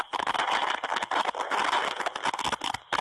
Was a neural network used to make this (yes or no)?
no